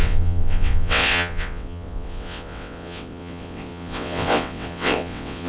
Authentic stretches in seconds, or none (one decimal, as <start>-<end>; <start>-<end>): none